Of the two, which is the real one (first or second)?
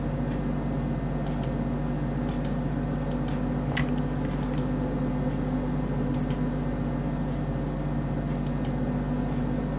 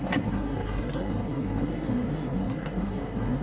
first